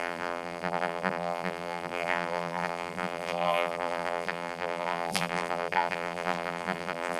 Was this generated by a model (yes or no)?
yes